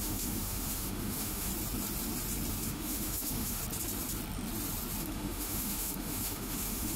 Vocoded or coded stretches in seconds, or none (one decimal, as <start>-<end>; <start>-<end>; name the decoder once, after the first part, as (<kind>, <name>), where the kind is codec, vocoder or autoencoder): 0.0-1.5 (autoencoder, DAC-VAE); 2.5-3.6; 5.0-7.0